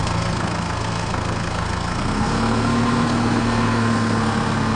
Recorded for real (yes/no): no